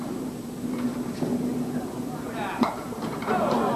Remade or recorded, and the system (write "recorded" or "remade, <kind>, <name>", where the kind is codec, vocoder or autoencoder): recorded